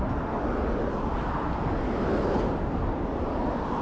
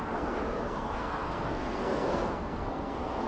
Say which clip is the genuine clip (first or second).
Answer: first